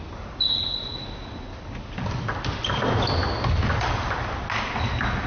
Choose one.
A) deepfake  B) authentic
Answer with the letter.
B